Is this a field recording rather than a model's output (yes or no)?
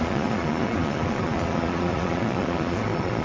no